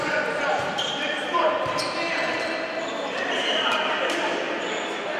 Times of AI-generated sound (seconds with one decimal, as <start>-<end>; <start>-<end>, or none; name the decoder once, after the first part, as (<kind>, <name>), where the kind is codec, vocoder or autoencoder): 0.9-4.0 (vocoder, BigVGAN v2)